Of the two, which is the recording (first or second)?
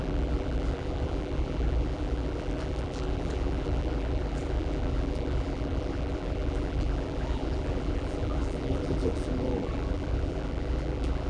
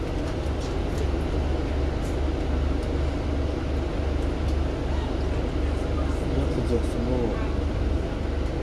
second